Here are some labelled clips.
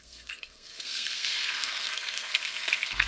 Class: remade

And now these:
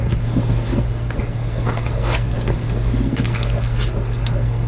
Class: remade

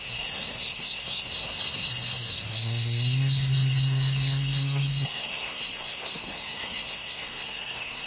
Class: remade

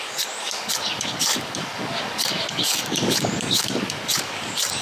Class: remade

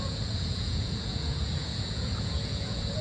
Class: remade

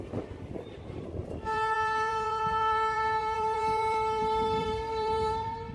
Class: remade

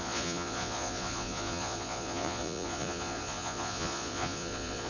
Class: remade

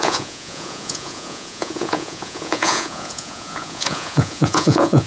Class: remade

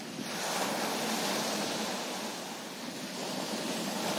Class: recorded